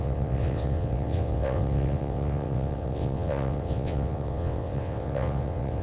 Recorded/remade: remade